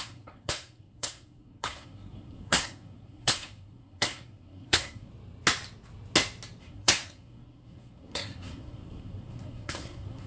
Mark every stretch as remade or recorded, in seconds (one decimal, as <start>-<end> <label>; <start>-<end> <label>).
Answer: 0.0-5.1 remade; 5.1-6.6 recorded; 6.6-10.3 remade